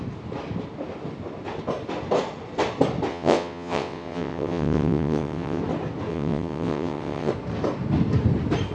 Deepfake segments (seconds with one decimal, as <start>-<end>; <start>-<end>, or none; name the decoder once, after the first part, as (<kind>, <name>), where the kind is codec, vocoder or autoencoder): 3.1-5.6 (vocoder, WaveNeXt); 6.1-7.3